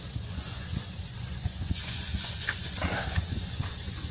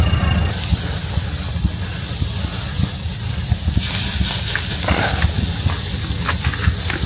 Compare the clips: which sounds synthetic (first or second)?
first